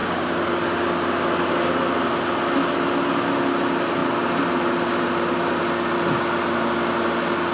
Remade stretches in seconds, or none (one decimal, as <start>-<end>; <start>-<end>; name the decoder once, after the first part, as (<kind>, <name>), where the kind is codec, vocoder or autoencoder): none